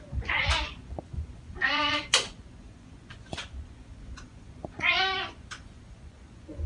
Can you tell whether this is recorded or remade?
remade